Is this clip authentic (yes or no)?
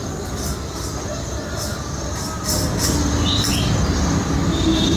yes